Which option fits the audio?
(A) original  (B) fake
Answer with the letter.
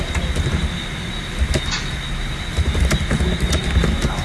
A